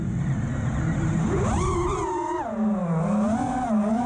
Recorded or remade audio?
recorded